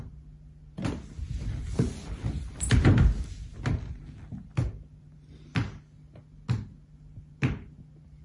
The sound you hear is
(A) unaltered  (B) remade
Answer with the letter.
A